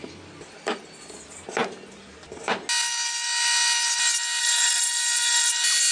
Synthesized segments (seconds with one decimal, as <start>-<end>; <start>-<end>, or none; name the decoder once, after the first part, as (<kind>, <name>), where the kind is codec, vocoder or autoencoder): 4.4-5.5 (codec, SNAC)